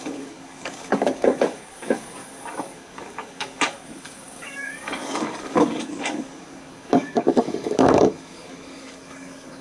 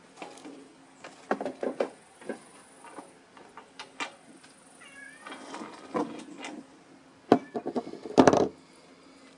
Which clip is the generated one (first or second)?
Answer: first